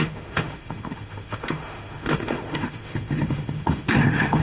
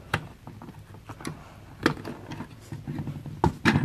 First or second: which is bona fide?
second